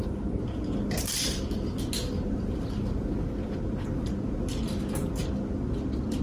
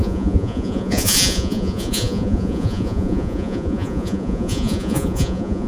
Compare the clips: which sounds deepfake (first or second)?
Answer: second